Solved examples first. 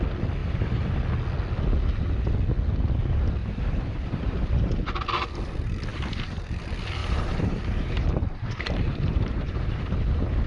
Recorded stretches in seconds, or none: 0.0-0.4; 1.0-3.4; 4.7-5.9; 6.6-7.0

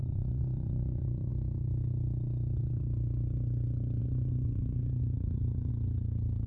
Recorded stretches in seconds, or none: 1.3-4.0; 5.7-6.5

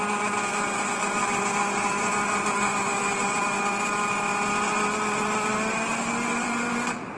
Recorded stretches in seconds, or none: 0.0-7.2

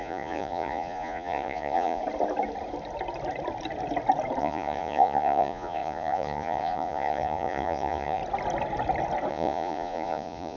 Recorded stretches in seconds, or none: 2.0-4.4; 8.2-9.3

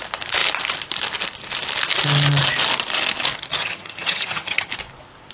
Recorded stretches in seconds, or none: 0.0-3.5; 4.7-5.3

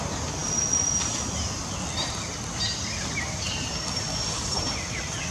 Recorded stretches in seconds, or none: 0.0-5.3

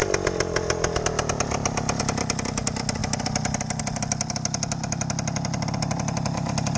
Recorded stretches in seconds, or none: 0.0-3.0; 3.8-6.8